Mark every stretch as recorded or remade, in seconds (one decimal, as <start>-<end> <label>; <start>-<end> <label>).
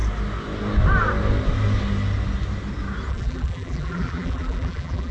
0.0-3.1 recorded; 3.1-5.1 remade